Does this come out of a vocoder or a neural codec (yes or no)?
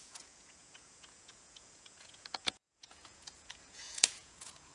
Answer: yes